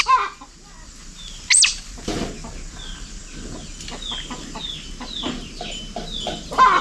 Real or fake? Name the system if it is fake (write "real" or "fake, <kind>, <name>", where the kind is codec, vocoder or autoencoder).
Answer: real